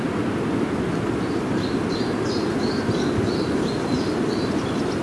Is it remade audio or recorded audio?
remade